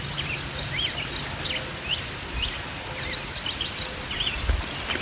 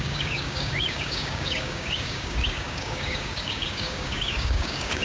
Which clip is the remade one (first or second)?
second